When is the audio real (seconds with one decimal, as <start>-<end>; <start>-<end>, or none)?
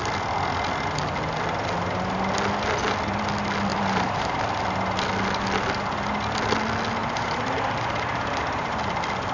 0.0-3.7; 4.4-7.0; 8.8-9.3